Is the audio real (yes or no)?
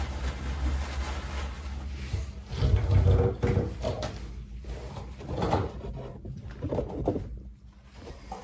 yes